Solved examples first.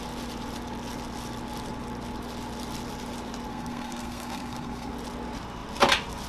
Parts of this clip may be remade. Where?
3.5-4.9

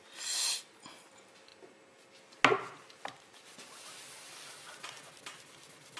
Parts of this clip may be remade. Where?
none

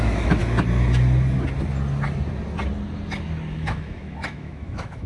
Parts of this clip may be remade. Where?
0.0-0.4; 3.5-5.1